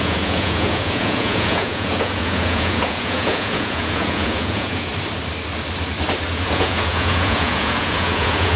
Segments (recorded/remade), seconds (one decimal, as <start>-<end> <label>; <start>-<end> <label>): 0.0-4.9 remade; 4.9-6.3 recorded; 6.3-8.6 remade

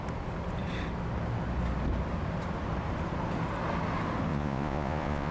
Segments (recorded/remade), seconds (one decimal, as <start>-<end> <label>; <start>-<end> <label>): 0.0-4.3 recorded; 4.3-5.3 remade

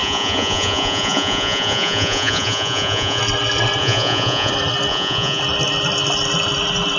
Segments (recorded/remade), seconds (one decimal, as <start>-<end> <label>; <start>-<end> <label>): 0.0-3.2 remade; 3.2-3.8 recorded; 3.8-4.5 remade; 4.5-4.9 recorded; 4.9-5.4 remade; 5.4-7.0 recorded

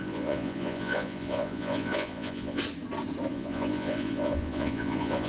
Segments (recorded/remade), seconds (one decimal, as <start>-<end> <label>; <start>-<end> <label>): 0.0-2.6 remade; 2.6-3.3 recorded; 3.3-5.3 remade

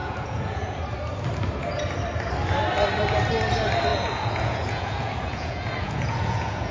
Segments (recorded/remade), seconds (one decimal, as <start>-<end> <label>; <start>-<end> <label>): 0.0-0.8 remade; 0.8-3.9 recorded; 3.9-6.7 remade

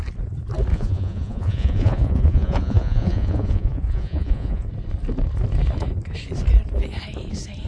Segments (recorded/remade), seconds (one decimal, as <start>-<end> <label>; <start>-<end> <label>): 0.0-0.7 recorded; 0.7-4.7 remade; 4.7-7.7 recorded